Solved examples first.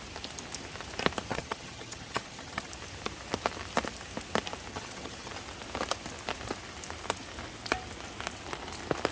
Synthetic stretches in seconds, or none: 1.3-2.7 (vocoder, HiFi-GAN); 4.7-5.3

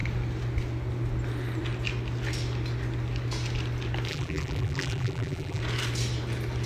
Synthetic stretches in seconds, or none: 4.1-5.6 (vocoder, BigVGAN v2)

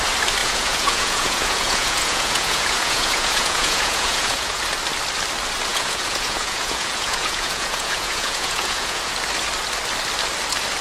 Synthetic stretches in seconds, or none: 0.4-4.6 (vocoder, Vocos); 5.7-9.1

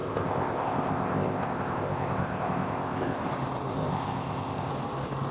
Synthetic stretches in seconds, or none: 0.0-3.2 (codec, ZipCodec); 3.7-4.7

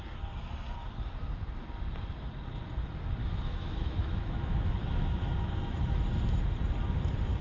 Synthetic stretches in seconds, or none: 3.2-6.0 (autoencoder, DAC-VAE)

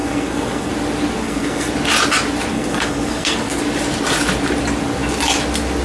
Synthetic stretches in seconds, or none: 0.0-0.7 (codec, SNAC); 1.2-1.7; 2.5-3.6

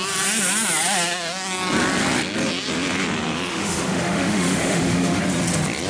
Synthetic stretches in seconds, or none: 3.5-5.2 (autoencoder, DAC-VAE)

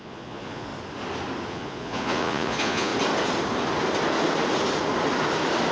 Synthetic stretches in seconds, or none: 0.0-0.7 (vocoder, Vocos); 1.5-2.9